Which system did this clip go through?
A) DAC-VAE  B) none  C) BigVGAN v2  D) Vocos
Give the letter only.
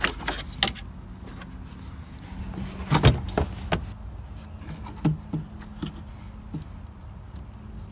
B